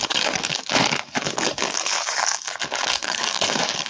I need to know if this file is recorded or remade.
remade